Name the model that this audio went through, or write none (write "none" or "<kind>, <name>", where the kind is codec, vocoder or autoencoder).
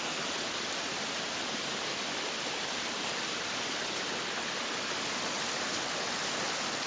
none